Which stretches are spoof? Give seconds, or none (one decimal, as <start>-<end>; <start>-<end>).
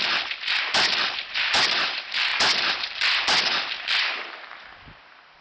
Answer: none